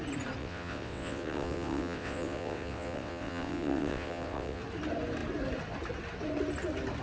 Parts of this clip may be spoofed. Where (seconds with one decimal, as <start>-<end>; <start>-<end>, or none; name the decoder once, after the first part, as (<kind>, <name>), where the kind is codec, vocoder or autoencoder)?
0.4-4.6 (vocoder, WaveNeXt)